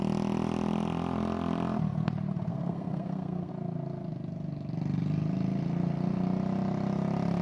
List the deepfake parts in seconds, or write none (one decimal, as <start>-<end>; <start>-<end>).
2.5-3.5